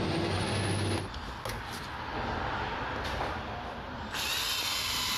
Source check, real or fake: real